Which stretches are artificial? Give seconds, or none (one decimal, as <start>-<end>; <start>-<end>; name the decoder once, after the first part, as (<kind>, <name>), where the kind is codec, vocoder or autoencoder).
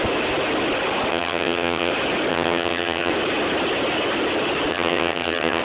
1.1-1.9 (vocoder, HiFi-GAN); 2.3-3.1; 4.7-5.6